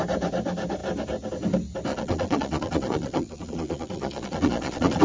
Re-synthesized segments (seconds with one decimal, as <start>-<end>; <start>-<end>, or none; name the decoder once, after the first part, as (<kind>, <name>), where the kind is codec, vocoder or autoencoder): 1.9-5.0 (vocoder, Vocos)